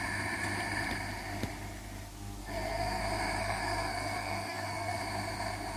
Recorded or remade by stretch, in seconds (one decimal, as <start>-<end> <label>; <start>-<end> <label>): 0.0-2.4 recorded; 2.4-3.0 remade; 3.0-3.4 recorded; 3.4-5.0 remade; 5.0-5.8 recorded